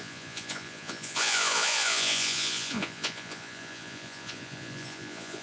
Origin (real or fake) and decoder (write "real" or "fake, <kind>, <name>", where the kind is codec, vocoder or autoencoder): fake, vocoder, Vocos